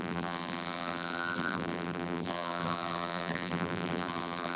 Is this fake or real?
fake